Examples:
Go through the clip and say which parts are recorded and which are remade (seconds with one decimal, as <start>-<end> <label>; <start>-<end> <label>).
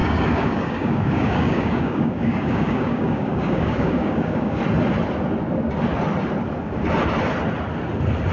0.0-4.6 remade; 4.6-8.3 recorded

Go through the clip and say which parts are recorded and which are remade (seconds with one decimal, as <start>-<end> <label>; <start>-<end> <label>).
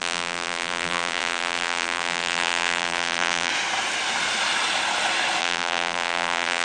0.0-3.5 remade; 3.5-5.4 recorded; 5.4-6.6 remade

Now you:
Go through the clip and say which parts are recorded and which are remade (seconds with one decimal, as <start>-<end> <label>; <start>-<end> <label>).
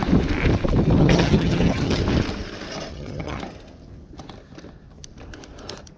0.0-1.0 recorded; 1.0-2.0 remade; 2.0-2.9 recorded; 2.9-3.4 remade; 3.4-6.0 recorded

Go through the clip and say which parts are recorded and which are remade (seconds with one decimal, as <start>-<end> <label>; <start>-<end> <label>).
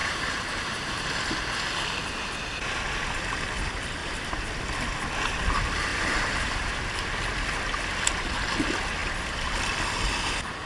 0.0-0.9 remade; 0.9-4.0 recorded; 4.0-4.5 remade; 4.5-5.9 recorded; 5.9-6.7 remade; 6.7-10.7 recorded